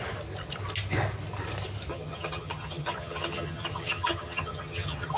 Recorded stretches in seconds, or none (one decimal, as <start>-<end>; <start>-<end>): 0.0-1.9